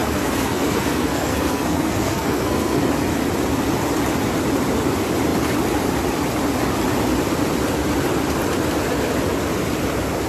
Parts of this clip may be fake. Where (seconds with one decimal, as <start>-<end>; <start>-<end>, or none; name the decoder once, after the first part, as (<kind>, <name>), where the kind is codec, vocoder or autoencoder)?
0.0-2.8 (codec, SNAC)